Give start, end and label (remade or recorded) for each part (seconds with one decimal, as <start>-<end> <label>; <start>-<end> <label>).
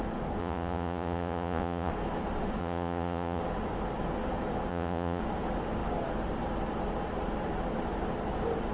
0.0-0.4 recorded; 0.4-1.9 remade; 1.9-2.6 recorded; 2.6-3.4 remade; 3.4-4.7 recorded; 4.7-5.2 remade; 5.2-8.7 recorded